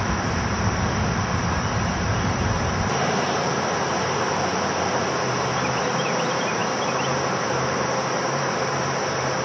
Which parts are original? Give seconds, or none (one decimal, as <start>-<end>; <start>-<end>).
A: 4.5-5.7; 6.6-7.3